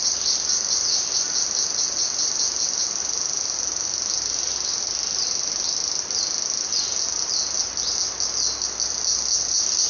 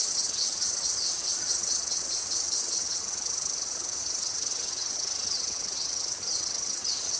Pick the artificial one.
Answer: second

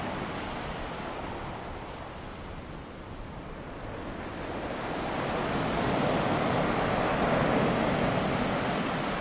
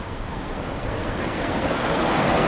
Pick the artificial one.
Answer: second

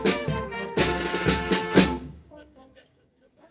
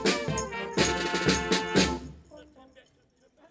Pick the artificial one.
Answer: first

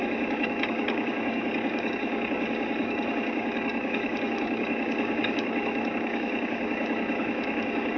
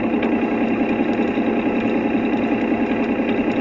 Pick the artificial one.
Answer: first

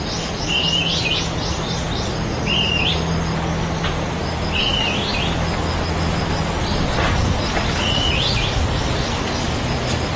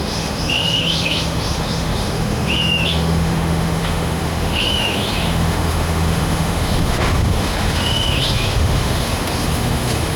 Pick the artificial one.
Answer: second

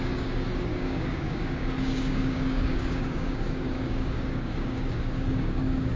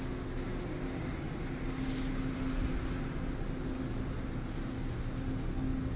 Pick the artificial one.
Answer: first